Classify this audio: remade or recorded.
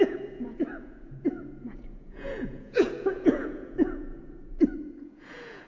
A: remade